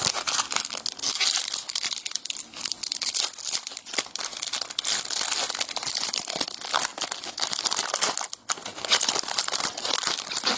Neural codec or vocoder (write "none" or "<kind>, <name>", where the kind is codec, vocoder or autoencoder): none